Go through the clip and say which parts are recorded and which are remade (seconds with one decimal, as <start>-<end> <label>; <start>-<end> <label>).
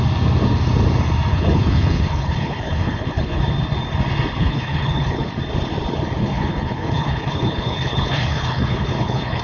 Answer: 0.0-1.3 recorded; 1.3-3.4 remade; 3.4-4.4 recorded; 4.4-5.3 remade; 5.3-6.2 recorded; 6.2-9.4 remade